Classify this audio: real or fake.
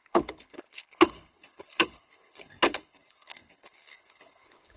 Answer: fake